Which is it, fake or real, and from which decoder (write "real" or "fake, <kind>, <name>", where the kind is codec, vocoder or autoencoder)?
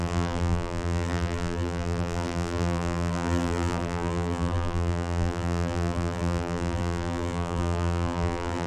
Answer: fake, vocoder, BigVGAN v2